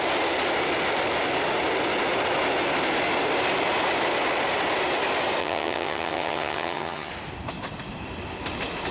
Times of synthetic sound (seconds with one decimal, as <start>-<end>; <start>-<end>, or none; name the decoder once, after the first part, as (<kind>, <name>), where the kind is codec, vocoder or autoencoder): 5.4-7.1 (vocoder, HiFi-GAN)